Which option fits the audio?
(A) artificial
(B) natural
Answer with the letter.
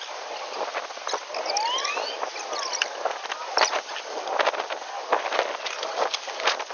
B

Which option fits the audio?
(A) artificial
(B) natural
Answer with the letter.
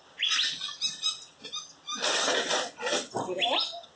B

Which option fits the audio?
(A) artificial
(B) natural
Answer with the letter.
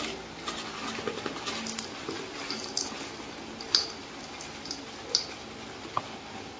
B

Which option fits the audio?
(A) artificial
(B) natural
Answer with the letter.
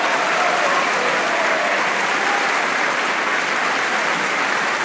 B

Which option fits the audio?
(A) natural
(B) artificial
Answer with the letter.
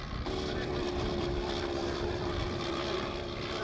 B